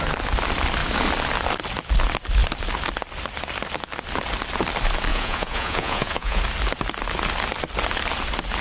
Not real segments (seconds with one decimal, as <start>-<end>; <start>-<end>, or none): 5.1-6.4